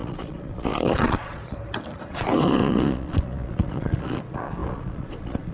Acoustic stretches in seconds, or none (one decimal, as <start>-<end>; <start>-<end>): 1.4-2.0